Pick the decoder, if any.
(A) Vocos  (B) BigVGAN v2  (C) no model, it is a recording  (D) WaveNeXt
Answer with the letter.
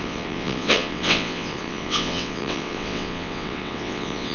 D